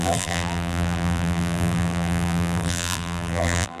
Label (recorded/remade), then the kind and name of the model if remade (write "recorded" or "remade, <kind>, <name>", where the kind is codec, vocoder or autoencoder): remade, vocoder, BigVGAN v2